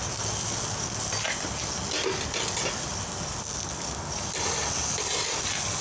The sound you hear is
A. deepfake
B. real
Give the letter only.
B